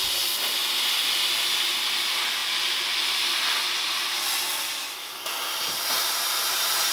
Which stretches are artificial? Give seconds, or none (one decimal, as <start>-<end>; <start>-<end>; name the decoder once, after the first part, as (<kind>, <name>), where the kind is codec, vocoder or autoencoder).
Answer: 0.0-0.6 (vocoder, BigVGAN v2); 1.6-6.9